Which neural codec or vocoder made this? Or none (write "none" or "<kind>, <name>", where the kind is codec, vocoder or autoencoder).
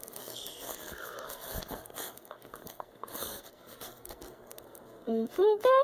codec, SNAC